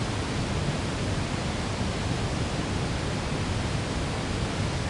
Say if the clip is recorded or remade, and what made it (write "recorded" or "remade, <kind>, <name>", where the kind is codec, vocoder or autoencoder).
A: recorded